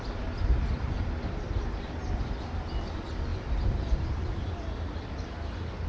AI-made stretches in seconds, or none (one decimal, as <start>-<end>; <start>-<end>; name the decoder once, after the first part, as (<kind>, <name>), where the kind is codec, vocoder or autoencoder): 3.3-5.5 (vocoder, BigVGAN v2)